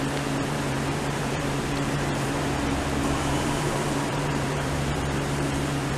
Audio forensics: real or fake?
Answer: fake